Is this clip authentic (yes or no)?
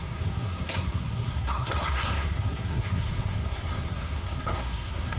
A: no